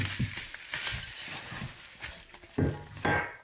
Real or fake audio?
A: real